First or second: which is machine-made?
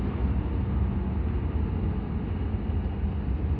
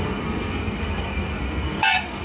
second